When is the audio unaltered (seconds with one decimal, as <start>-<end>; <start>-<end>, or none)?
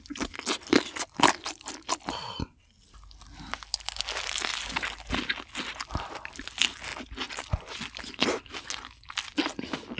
0.0-10.0